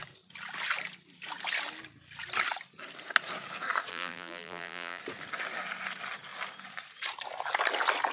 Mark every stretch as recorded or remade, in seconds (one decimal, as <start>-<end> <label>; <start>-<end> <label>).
0.0-3.9 recorded; 3.9-5.0 remade; 5.0-8.1 recorded